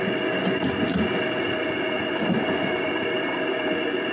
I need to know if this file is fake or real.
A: real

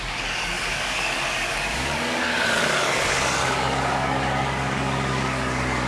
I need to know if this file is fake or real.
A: fake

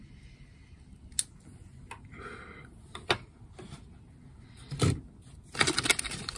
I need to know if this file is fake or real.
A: real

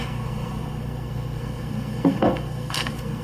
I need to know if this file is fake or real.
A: fake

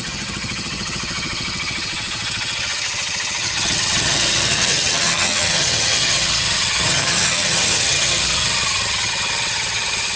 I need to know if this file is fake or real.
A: fake